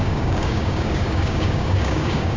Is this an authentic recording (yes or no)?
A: no